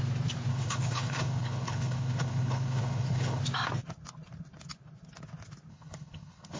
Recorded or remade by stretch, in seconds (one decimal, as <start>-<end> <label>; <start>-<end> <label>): 0.0-0.5 recorded; 0.5-3.4 remade; 3.4-5.7 recorded; 5.7-6.6 remade

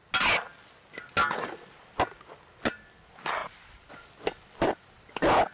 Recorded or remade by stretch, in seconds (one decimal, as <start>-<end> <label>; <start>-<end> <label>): 0.0-3.4 recorded; 3.4-3.9 remade; 3.9-5.5 recorded